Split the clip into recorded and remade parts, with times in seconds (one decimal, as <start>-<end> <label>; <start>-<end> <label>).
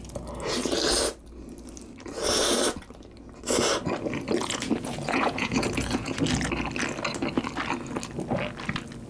0.0-4.4 recorded; 4.4-6.2 remade; 6.2-9.1 recorded